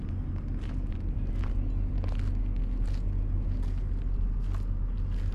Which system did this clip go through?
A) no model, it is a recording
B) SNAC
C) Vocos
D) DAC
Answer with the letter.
A